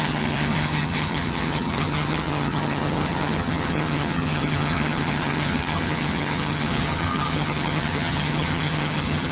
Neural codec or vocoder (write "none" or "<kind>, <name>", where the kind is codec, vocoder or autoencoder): vocoder, HiFi-GAN